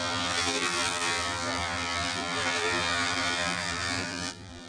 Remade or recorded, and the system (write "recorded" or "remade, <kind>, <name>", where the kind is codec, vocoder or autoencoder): remade, vocoder, BigVGAN v2